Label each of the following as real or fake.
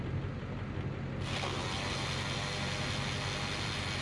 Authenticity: real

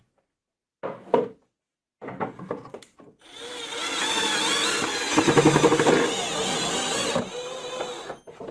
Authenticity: real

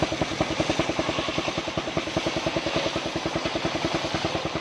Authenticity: real